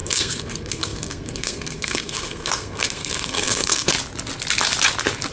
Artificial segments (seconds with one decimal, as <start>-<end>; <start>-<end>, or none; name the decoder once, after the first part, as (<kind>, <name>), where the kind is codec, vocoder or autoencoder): 0.0-3.9 (codec, SNAC)

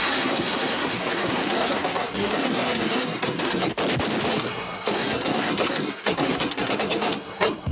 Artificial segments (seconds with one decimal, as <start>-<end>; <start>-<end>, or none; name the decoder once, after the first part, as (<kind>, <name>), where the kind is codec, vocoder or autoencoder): 0.0-3.7 (codec, SNAC); 4.3-7.7